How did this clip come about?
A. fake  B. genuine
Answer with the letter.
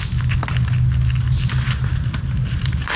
B